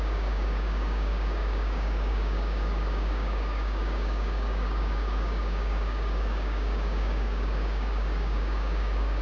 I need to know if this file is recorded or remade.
remade